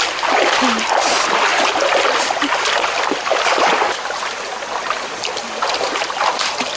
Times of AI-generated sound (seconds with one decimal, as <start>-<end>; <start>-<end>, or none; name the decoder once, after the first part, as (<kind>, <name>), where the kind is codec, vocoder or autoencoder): none